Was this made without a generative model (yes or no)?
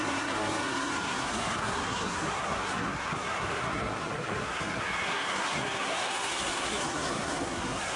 no